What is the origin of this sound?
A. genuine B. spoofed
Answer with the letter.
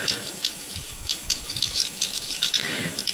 B